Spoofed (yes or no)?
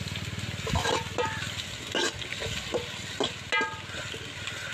no